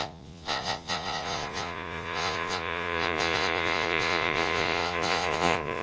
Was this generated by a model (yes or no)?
yes